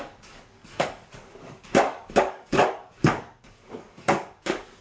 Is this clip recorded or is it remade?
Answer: remade